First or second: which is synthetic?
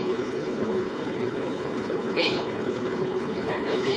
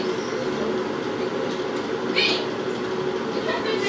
first